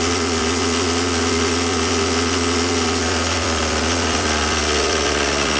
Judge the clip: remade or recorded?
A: remade